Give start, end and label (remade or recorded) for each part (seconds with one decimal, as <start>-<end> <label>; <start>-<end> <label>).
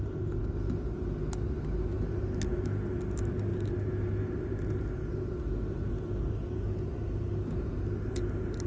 0.0-8.7 recorded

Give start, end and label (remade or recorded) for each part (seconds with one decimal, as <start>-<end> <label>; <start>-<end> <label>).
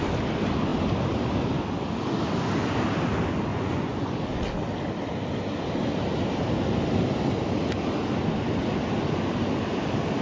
0.0-3.5 recorded; 3.5-4.1 remade; 4.1-10.2 recorded